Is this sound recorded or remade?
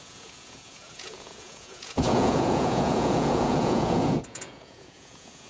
remade